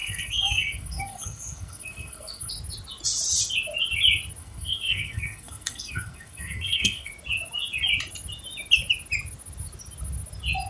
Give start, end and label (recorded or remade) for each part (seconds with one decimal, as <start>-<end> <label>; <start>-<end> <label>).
0.0-2.5 remade; 2.5-4.4 recorded; 4.4-7.1 remade; 7.1-10.7 recorded